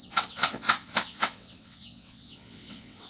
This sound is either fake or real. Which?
fake